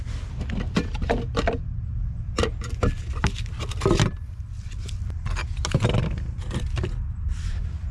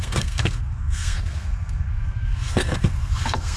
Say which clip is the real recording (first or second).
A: first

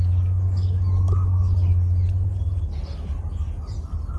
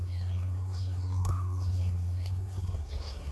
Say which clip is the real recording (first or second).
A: first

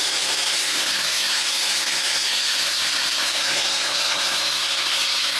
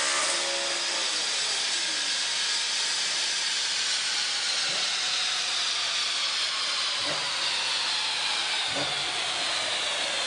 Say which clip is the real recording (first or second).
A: second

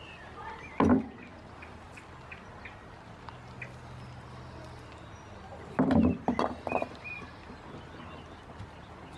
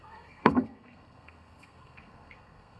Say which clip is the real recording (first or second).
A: first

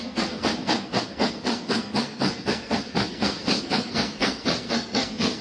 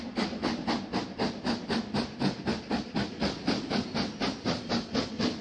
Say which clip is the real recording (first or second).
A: second